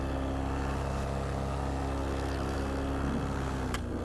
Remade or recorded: recorded